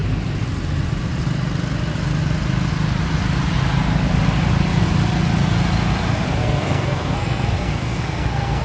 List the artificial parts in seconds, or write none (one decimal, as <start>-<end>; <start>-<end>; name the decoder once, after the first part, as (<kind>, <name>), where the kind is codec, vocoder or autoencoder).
6.4-8.6 (codec, SNAC)